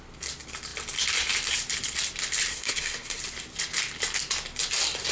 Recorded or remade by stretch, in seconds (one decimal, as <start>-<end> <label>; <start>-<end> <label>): 0.0-2.5 recorded; 2.5-3.2 remade; 3.2-5.1 recorded